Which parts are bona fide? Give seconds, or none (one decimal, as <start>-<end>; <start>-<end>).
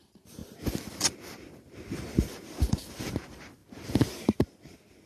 0.4-0.9; 3.6-4.4